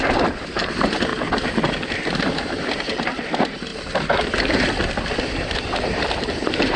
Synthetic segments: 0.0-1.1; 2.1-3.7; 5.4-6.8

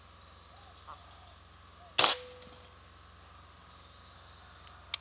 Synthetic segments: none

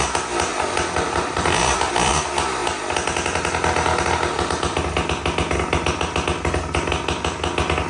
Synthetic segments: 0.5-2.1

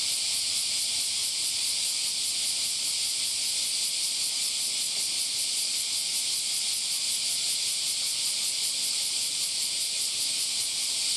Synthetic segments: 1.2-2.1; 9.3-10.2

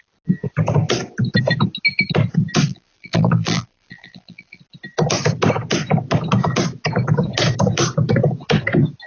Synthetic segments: 2.7-4.6